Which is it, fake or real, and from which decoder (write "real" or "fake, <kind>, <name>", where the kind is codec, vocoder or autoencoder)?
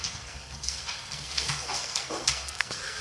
fake, codec, SNAC